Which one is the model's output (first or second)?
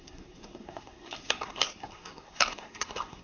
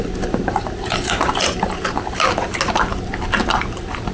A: first